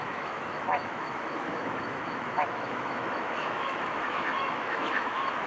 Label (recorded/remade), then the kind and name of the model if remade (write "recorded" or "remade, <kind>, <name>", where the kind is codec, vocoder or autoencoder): remade, autoencoder, DAC-VAE